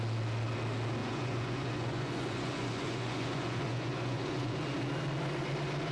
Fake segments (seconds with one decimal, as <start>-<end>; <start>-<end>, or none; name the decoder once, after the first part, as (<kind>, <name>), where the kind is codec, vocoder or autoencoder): 1.0-4.5 (vocoder, Vocos)